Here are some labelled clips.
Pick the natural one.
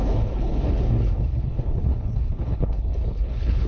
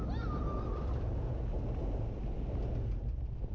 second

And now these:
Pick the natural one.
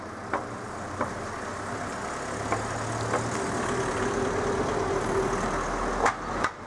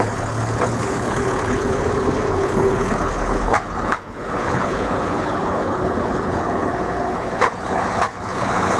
first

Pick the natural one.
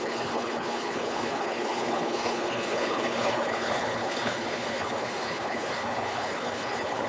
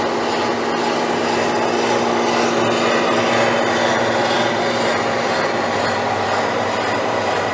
second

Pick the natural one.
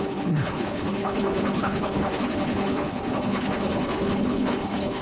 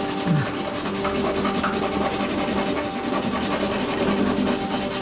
second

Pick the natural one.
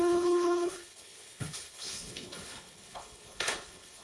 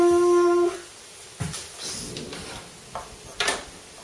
second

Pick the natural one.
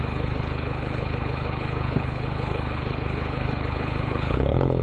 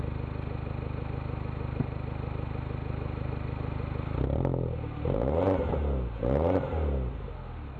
second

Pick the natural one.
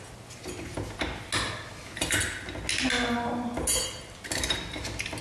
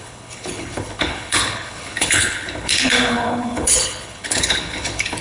first